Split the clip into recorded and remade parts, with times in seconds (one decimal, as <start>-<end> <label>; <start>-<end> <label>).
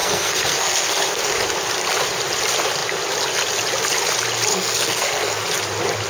0.0-1.3 remade; 1.3-4.5 recorded; 4.5-5.4 remade; 5.4-6.1 recorded